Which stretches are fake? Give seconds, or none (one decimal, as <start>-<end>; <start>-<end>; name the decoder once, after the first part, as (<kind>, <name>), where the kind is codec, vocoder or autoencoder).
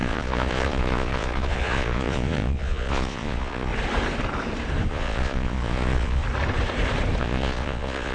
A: 0.0-3.7 (vocoder, Vocos); 4.9-6.2; 7.2-8.1